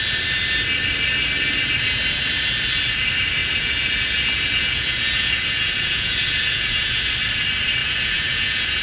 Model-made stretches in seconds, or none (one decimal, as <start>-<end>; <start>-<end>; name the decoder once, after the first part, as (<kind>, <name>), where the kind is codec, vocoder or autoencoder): 3.4-7.0 (vocoder, Vocos); 7.8-8.8

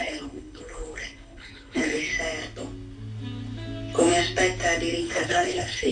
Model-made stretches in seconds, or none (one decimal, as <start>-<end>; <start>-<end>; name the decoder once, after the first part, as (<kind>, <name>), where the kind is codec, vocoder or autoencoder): 0.0-2.1 (codec, HILCodec); 5.0-5.9

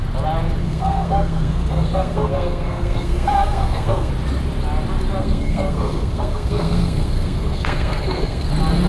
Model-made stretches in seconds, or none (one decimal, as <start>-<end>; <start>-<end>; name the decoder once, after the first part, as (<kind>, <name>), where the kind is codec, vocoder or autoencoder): 0.6-4.1 (codec, SNAC); 5.2-8.5

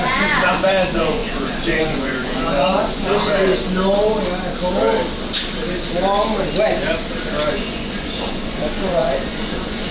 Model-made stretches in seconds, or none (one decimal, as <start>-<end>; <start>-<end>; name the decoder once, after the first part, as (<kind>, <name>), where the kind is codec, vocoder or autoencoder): 0.0-3.5 (vocoder, Vocos); 7.5-9.9

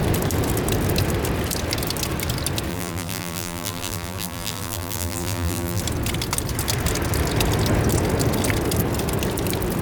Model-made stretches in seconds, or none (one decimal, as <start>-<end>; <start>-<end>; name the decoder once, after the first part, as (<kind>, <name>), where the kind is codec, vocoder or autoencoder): 2.7-5.8 (vocoder, BigVGAN v2)